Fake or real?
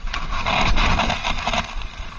real